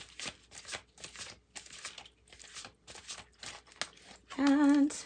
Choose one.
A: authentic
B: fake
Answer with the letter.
A